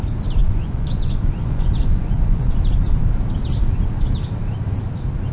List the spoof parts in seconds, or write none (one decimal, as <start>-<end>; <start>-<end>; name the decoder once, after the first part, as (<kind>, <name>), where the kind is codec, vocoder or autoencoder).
0.4-2.5 (vocoder, Vocos)